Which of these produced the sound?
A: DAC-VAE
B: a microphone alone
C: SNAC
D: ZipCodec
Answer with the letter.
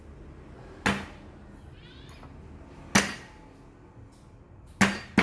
B